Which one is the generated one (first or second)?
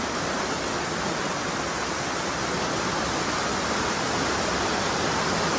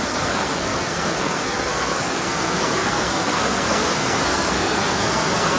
second